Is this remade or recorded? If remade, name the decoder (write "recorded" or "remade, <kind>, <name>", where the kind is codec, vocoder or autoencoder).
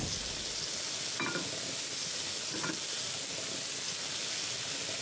recorded